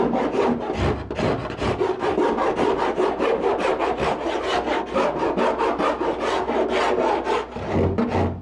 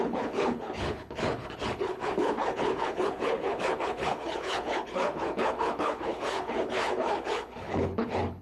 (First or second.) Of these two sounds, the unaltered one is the first